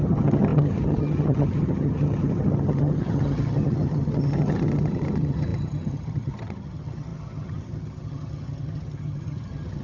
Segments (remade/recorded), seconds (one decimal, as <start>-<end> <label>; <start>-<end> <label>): 0.0-9.8 remade